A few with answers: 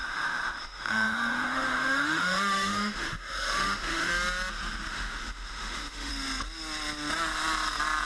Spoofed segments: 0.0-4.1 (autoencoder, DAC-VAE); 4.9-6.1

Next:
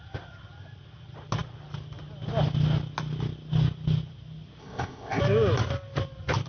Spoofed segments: 4.6-5.2 (codec, ZipCodec)